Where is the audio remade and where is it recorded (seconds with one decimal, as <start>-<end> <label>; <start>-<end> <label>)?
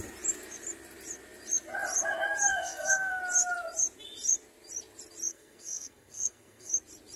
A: 0.0-2.5 recorded; 2.5-3.2 remade; 3.2-5.3 recorded; 5.3-6.7 remade; 6.7-7.2 recorded